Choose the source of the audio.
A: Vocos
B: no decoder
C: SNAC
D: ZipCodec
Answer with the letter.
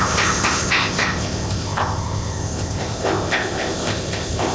D